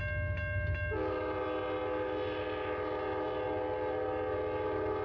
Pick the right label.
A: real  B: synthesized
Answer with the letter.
A